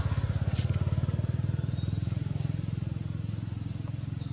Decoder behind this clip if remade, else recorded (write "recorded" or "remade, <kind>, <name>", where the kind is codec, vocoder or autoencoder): recorded